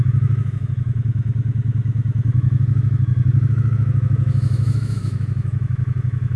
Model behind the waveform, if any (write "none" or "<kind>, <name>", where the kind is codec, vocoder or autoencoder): autoencoder, DAC-VAE